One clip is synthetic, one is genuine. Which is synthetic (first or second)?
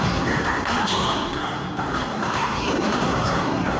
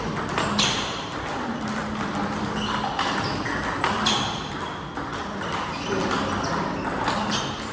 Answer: first